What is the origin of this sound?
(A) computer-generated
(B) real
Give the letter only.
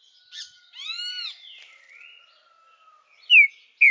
B